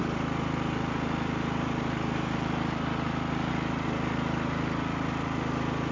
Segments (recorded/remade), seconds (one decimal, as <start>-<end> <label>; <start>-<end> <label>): 0.0-5.9 recorded